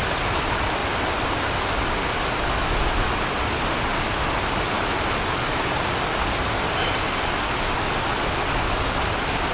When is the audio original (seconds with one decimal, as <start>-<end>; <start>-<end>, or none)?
0.0-9.5